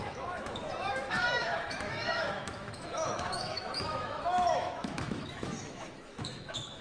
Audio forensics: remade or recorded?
remade